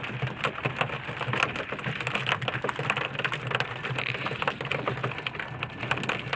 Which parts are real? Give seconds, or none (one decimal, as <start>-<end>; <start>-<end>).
0.0-6.4